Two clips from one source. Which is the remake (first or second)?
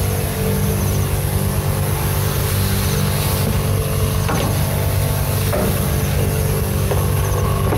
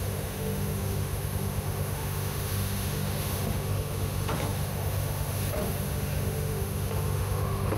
second